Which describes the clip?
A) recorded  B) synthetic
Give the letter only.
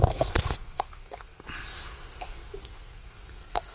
B